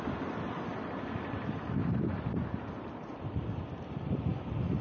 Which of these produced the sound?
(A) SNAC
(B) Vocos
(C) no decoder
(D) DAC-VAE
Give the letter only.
C